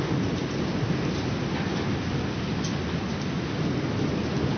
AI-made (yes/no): no